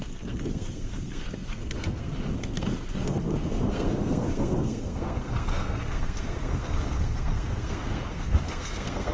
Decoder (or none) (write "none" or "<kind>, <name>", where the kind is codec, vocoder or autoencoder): codec, SNAC